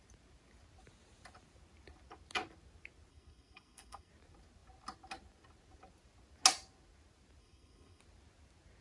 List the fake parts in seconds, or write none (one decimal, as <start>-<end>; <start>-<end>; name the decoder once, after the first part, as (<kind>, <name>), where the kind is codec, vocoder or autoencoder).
3.1-4.1 (codec, SNAC); 7.4-8.0